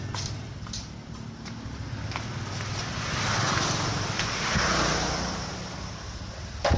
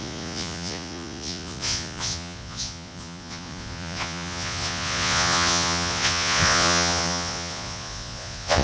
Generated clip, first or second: second